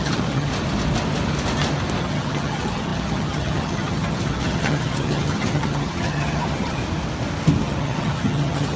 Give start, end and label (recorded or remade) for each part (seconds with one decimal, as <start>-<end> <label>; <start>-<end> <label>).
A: 0.0-0.5 remade; 0.5-2.0 recorded; 2.0-6.8 remade; 6.8-7.6 recorded; 7.6-8.8 remade